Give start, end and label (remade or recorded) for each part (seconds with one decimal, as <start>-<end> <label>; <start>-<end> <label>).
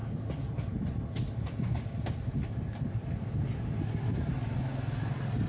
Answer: 0.0-3.3 remade; 3.3-5.5 recorded